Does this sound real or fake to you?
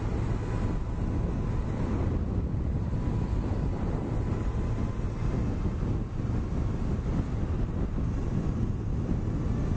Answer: real